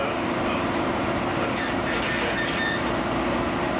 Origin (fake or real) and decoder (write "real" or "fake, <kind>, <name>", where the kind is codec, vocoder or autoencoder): real